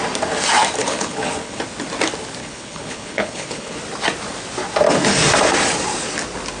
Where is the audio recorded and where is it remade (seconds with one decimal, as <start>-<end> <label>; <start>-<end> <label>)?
0.0-0.8 recorded; 0.8-1.6 remade; 1.6-2.4 recorded; 2.4-3.8 remade; 3.8-6.6 recorded